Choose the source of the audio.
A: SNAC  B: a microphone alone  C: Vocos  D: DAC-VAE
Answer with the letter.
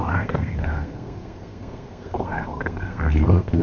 A